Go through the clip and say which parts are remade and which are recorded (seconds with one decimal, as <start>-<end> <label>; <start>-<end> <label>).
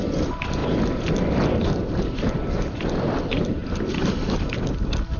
0.0-0.6 recorded; 0.6-3.2 remade; 3.2-3.6 recorded; 3.6-5.2 remade